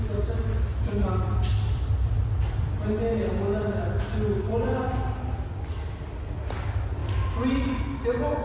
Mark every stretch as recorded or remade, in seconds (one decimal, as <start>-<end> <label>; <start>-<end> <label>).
0.0-8.4 recorded